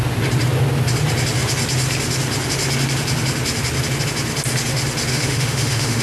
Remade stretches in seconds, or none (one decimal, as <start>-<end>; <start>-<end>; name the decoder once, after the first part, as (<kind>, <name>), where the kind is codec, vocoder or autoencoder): 5.1-6.0 (autoencoder, DAC-VAE)